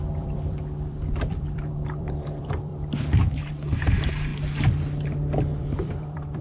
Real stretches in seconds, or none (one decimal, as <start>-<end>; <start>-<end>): 2.7-3.5; 4.3-5.6